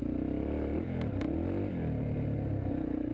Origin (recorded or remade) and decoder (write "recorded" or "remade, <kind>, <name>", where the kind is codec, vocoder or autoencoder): recorded